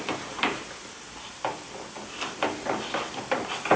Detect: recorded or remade recorded